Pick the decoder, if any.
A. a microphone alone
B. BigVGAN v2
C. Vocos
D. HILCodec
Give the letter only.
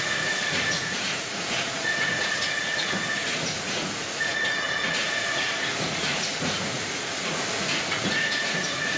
C